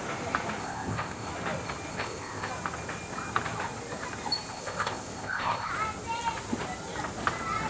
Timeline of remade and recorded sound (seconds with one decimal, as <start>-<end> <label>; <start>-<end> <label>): 0.0-0.6 recorded; 0.6-1.3 remade; 1.3-1.9 recorded; 1.9-2.5 remade; 2.5-4.5 recorded; 4.5-5.7 remade; 5.7-7.7 recorded